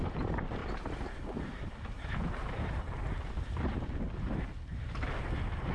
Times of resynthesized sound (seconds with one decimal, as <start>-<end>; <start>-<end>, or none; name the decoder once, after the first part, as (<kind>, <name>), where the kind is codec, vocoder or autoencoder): none